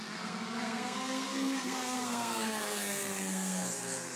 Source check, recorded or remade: remade